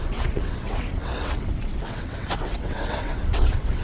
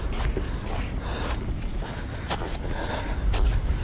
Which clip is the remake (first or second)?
first